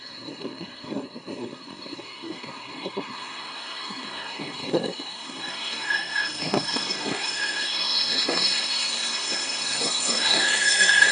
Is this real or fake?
fake